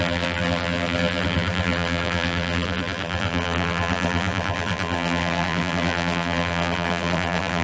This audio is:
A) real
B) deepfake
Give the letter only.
B